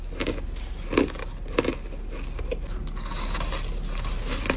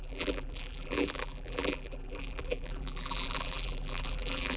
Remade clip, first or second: second